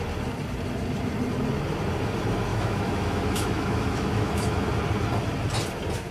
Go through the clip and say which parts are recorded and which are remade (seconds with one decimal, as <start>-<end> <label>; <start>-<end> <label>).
0.0-2.5 recorded; 2.5-4.7 remade; 4.7-6.1 recorded